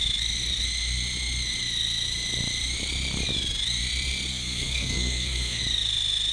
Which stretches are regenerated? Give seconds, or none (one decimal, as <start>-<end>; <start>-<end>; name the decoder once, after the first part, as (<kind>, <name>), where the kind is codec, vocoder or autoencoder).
4.3-5.6 (codec, SNAC)